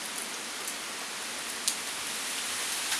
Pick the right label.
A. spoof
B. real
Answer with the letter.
B